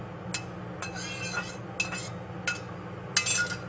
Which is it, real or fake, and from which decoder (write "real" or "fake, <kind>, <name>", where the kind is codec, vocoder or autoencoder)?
real